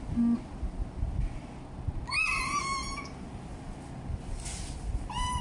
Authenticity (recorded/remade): recorded